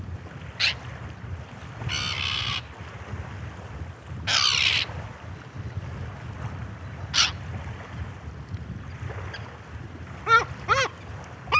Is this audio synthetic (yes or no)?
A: no